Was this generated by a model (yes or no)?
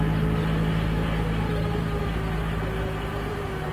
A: no